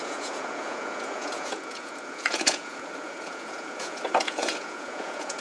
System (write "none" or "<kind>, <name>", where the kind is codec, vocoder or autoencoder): vocoder, Vocos